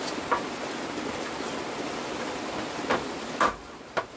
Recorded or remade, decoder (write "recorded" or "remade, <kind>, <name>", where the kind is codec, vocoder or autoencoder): recorded